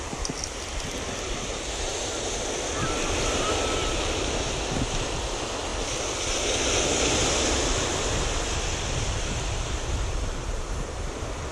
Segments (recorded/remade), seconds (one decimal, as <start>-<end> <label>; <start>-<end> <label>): 0.0-11.5 recorded